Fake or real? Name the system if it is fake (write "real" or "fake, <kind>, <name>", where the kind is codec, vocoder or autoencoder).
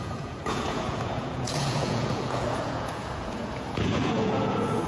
fake, vocoder, Vocos